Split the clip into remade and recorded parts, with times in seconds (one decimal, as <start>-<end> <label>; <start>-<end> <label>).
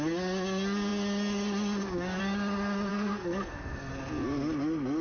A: 0.0-2.9 recorded; 2.9-3.9 remade; 3.9-5.0 recorded